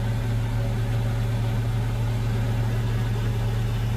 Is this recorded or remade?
recorded